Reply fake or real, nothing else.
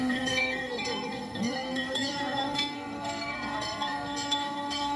fake